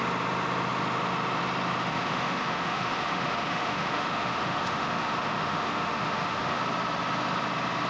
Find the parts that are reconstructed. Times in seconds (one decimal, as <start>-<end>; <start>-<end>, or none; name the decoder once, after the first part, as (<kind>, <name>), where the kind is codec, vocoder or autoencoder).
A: 1.9-6.6 (autoencoder, DAC-VAE)